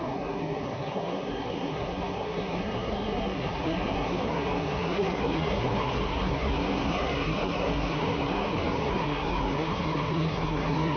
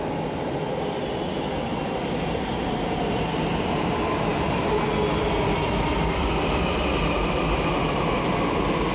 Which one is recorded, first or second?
second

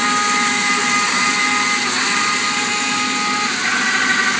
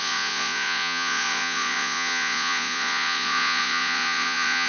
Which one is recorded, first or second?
first